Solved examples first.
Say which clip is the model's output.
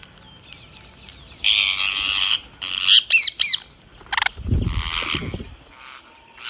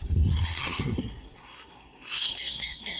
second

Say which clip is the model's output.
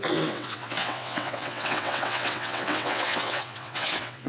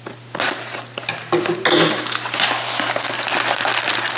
first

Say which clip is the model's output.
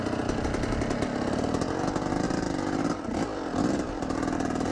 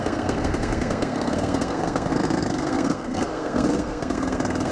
second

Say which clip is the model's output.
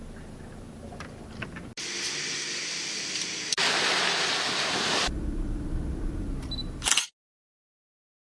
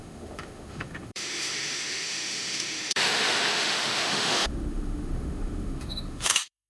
second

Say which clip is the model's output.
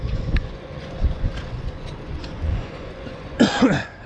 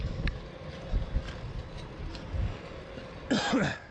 first